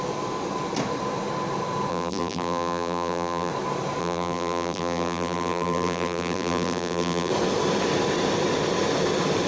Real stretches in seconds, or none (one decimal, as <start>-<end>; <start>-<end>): 0.0-1.9; 3.5-4.0; 7.3-9.5